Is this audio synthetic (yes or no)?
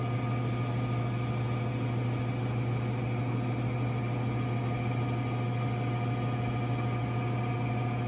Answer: no